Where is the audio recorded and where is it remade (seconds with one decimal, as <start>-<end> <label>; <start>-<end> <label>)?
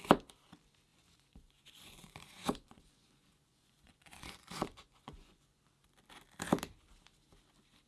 0.0-0.9 recorded; 0.9-5.6 remade; 5.6-7.9 recorded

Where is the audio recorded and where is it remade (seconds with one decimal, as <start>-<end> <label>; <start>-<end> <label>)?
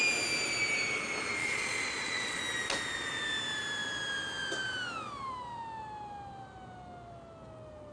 0.0-1.4 recorded; 1.4-2.4 remade; 2.4-7.9 recorded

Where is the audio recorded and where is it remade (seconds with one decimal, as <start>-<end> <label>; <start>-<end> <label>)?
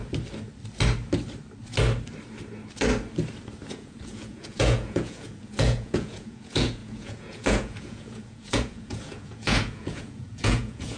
0.0-3.7 recorded; 3.7-11.0 remade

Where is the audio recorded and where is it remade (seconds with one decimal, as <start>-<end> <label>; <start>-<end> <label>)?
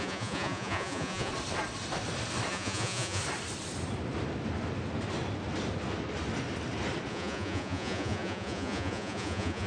0.0-1.3 remade; 1.3-2.5 recorded; 2.5-3.2 remade; 3.2-7.1 recorded; 7.1-9.7 remade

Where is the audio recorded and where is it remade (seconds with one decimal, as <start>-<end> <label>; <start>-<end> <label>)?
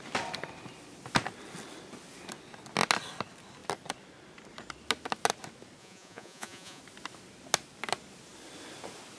0.0-5.8 recorded; 5.8-6.8 remade; 6.8-9.2 recorded